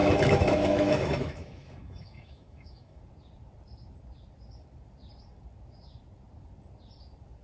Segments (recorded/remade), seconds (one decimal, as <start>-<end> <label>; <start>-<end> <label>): 0.0-3.0 remade; 3.0-7.4 recorded